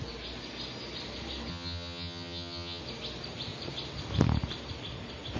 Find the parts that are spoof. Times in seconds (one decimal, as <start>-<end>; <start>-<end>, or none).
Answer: 1.5-2.8